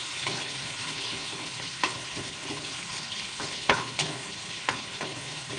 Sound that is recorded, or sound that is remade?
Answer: remade